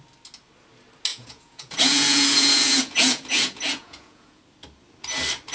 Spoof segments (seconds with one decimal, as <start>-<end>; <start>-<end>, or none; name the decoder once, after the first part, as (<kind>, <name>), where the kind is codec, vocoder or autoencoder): 1.1-4.4 (vocoder, Vocos)